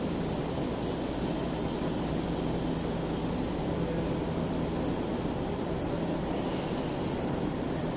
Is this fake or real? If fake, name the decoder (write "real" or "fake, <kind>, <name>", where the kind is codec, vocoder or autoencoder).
real